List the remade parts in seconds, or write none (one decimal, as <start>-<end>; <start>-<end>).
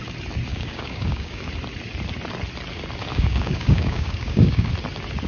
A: 0.5-1.5; 3.1-4.7